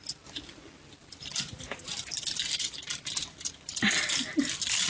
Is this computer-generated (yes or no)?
no